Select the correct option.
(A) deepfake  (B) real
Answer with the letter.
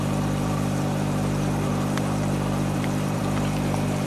A